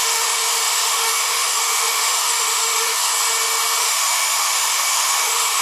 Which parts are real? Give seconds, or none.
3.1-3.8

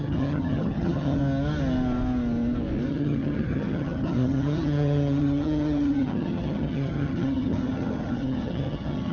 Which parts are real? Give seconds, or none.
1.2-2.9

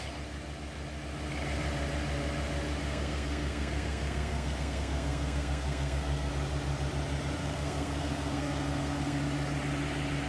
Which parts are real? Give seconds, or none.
0.0-2.8; 6.3-7.4; 9.2-10.3

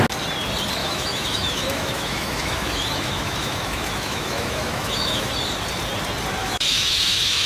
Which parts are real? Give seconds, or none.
0.0-0.8; 5.3-6.4